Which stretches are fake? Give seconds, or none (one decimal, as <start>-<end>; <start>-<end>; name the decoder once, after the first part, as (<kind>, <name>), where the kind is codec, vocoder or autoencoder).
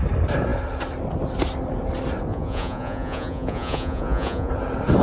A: 2.3-4.5 (vocoder, Vocos)